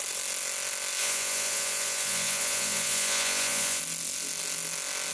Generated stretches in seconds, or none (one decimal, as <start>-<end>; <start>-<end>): 1.0-3.8